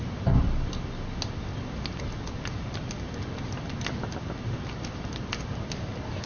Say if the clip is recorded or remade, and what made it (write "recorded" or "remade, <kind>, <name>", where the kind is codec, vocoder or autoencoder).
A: recorded